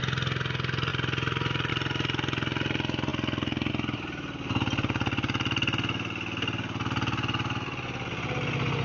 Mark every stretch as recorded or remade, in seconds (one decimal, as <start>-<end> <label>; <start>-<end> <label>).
0.0-8.8 recorded